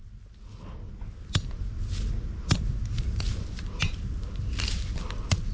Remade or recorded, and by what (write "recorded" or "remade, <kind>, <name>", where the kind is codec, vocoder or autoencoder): recorded